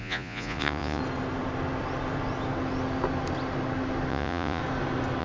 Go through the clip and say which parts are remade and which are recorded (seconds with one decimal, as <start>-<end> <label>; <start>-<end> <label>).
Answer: 0.0-1.0 remade; 1.0-4.1 recorded; 4.1-4.6 remade; 4.6-5.2 recorded